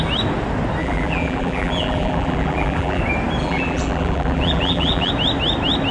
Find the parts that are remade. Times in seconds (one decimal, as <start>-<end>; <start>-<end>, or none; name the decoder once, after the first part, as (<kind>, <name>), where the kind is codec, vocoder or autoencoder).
0.8-3.0 (vocoder, BigVGAN v2); 3.4-5.1